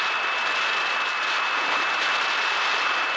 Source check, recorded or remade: recorded